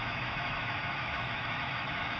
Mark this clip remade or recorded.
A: remade